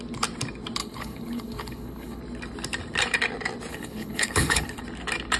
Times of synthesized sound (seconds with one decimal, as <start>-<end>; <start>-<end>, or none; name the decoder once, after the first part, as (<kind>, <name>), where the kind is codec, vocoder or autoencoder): 0.8-2.2 (codec, HILCodec); 3.7-4.8